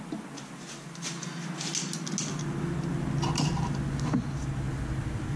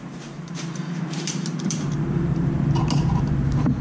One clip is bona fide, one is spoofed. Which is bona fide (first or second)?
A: first